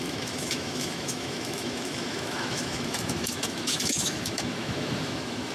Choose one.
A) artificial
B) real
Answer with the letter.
A